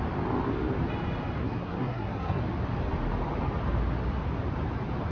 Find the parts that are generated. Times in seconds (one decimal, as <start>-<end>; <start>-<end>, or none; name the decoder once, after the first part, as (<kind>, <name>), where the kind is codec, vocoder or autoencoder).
1.4-2.4 (codec, SNAC)

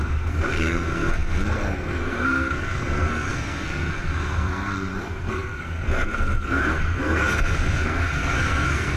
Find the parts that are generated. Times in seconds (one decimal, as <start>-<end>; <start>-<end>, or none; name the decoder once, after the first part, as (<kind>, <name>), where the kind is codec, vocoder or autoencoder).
0.0-9.0 (codec, SNAC)

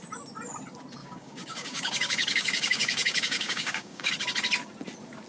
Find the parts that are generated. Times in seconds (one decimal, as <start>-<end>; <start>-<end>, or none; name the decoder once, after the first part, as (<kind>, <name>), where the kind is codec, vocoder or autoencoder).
1.0-4.1 (codec, DAC)

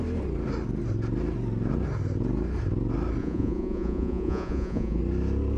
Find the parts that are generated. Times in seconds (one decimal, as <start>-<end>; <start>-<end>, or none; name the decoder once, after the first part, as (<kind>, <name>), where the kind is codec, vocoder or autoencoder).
3.2-5.0 (vocoder, Vocos)

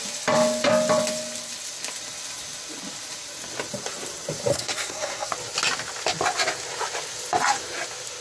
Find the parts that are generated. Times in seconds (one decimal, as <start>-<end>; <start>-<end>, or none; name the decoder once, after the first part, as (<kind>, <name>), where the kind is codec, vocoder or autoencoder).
4.5-5.3 (codec, SNAC)

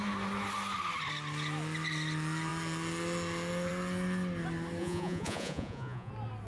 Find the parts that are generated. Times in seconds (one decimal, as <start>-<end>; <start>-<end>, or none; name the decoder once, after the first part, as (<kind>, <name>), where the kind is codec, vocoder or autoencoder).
4.8-6.1 (vocoder, Vocos)

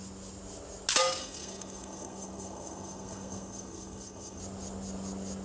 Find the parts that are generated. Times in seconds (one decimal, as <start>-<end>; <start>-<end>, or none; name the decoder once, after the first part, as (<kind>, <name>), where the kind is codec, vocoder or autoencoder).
1.2-4.4 (codec, SNAC)